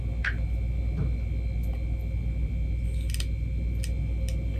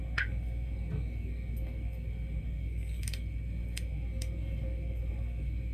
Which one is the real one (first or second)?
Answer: first